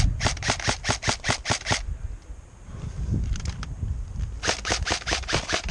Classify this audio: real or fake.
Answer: real